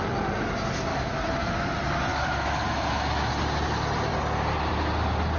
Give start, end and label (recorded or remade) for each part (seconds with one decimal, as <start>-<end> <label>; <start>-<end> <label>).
0.0-0.9 recorded; 0.9-1.5 remade; 1.5-2.1 recorded; 2.1-3.3 remade; 3.3-5.4 recorded